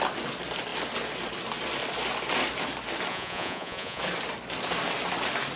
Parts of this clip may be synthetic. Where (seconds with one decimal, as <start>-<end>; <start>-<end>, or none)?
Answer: 3.1-4.0

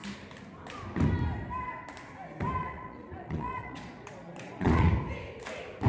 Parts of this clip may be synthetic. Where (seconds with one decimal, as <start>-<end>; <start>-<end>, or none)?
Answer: 2.6-4.9